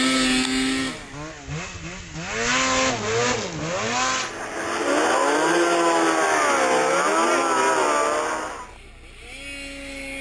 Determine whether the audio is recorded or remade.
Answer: recorded